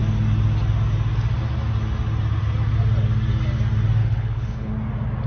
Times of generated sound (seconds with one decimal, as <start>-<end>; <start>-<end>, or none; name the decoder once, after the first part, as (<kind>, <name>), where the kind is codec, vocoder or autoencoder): 4.0-4.7 (codec, HILCodec)